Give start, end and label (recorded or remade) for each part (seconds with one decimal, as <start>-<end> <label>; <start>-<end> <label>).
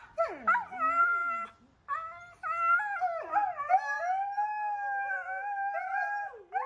0.0-6.7 recorded